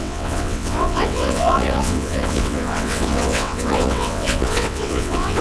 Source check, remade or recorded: remade